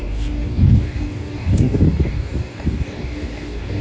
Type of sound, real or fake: fake